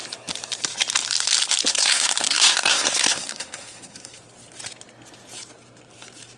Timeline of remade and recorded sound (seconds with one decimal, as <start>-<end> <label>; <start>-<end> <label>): 0.0-1.7 recorded; 1.7-4.2 remade; 4.2-6.4 recorded